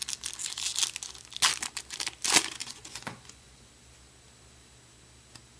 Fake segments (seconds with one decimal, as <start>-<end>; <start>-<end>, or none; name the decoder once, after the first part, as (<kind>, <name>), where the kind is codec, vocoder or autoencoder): 2.6-3.7 (vocoder, Vocos)